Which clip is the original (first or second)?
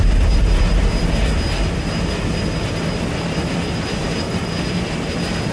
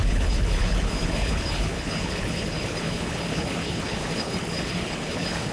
first